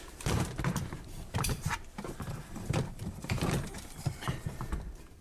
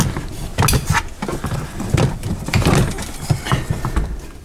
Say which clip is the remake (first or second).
first